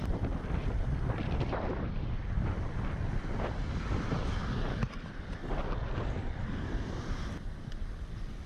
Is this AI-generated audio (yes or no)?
no